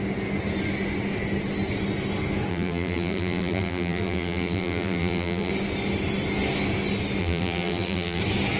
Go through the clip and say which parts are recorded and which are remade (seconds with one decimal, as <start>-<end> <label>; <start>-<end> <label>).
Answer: 0.0-2.5 recorded; 2.5-5.5 remade; 5.5-7.2 recorded; 7.2-8.2 remade; 8.2-8.6 recorded